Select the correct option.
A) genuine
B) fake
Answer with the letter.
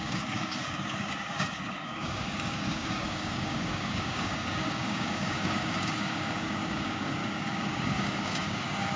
B